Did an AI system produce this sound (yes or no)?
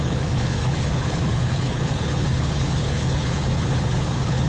yes